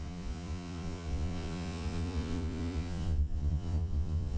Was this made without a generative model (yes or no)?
no